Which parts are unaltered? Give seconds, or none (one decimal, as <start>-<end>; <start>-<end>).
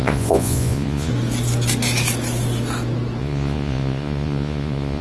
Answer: 1.1-3.2